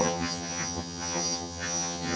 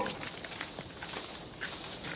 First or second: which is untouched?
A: second